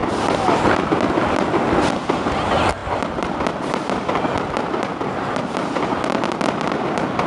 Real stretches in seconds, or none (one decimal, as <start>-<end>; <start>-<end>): 0.9-2.8